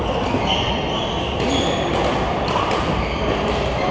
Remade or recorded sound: recorded